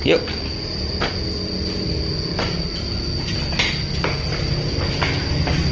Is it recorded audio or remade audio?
recorded